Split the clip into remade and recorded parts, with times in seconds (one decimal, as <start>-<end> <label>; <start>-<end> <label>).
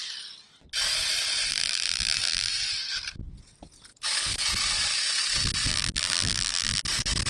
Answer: 0.0-1.5 recorded; 1.5-2.5 remade; 2.5-5.7 recorded; 5.7-6.8 remade; 6.8-7.3 recorded